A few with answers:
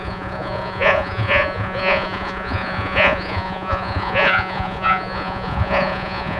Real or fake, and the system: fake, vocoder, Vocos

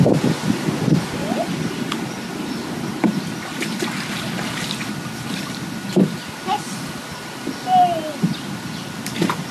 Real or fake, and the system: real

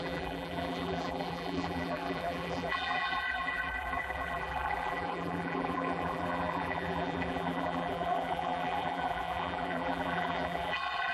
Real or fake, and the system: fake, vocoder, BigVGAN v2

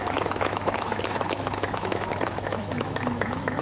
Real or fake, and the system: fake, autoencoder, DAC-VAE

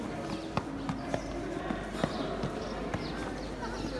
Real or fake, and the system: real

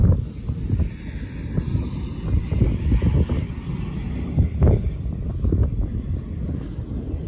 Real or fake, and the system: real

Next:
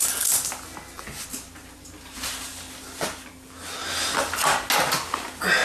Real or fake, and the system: real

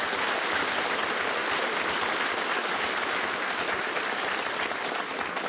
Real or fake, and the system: real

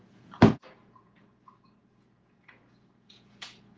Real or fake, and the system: fake, vocoder, Vocos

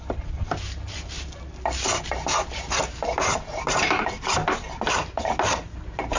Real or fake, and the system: real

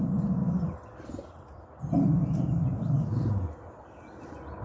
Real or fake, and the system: real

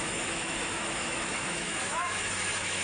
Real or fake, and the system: fake, autoencoder, DAC-VAE